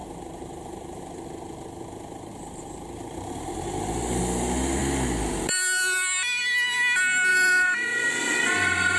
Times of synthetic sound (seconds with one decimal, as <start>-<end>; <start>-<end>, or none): 0.0-1.0; 2.3-4.2; 7.3-8.1